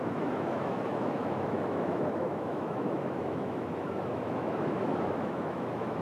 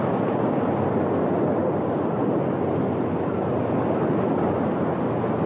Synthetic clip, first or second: first